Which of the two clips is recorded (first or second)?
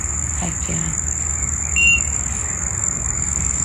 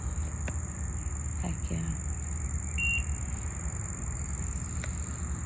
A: second